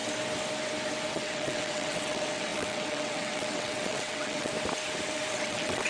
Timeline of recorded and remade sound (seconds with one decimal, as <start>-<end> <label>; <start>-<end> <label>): 0.0-1.1 recorded; 1.1-4.5 remade; 4.5-5.3 recorded; 5.3-5.9 remade